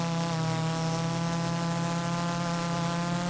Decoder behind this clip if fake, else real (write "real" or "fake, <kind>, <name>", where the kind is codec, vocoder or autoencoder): real